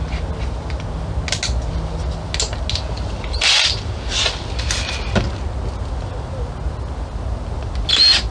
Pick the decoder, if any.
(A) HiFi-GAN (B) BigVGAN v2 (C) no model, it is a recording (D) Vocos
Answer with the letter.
C